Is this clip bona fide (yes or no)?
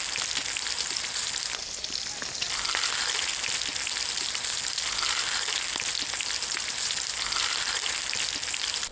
yes